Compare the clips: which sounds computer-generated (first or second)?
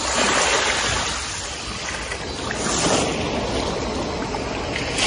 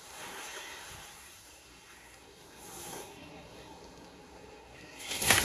second